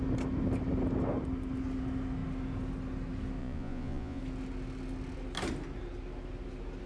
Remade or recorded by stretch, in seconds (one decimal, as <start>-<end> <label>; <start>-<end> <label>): 0.0-3.4 recorded; 3.4-4.2 remade; 4.2-6.9 recorded